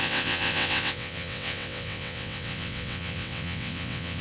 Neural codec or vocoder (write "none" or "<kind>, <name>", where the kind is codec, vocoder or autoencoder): vocoder, WaveNeXt